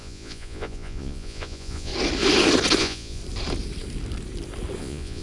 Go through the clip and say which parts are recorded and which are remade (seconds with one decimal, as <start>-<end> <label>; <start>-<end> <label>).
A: 0.0-1.9 remade; 1.9-2.8 recorded; 2.8-3.2 remade; 3.2-4.8 recorded; 4.8-5.2 remade